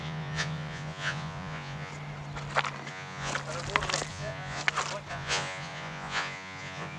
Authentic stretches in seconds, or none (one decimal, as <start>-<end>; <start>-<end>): 1.9-2.9; 3.3-4.1; 4.6-5.1